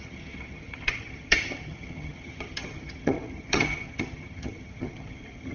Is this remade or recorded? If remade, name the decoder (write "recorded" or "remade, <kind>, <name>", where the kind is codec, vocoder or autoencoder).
remade, vocoder, HiFi-GAN